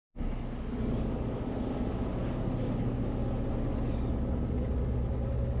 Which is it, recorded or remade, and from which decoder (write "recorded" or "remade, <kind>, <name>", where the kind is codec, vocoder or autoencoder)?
recorded